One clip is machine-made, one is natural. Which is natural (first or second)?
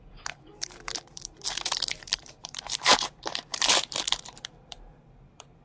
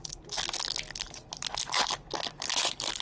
second